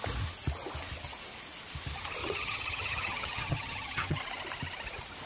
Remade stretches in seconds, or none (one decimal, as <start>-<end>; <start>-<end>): 2.2-4.2